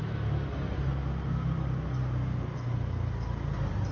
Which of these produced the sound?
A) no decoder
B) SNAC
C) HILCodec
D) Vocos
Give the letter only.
A